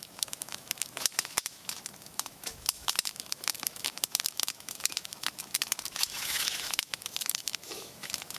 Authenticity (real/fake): fake